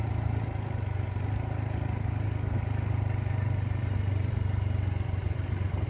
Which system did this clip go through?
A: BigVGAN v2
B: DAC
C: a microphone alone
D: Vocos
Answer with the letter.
C